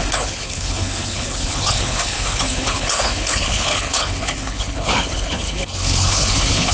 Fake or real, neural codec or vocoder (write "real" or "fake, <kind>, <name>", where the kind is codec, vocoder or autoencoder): fake, codec, HILCodec